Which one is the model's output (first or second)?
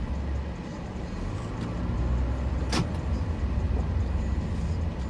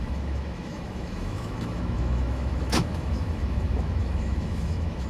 second